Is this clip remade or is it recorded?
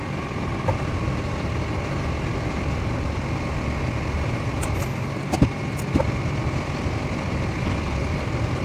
recorded